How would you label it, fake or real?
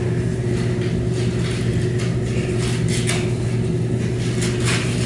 real